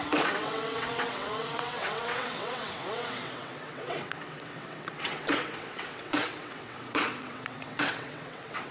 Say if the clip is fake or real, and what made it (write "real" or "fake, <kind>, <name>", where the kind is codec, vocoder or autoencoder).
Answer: fake, vocoder, WaveNeXt